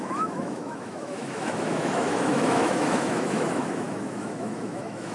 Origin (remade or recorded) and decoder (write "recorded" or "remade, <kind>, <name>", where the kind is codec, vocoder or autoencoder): remade, autoencoder, DAC-VAE